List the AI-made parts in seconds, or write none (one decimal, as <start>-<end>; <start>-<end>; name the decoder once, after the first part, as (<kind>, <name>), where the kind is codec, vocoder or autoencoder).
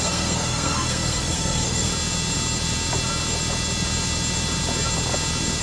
0.0-1.9 (codec, SNAC)